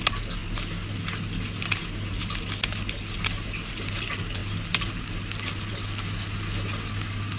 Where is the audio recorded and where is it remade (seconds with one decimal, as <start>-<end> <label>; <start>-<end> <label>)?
0.0-7.4 recorded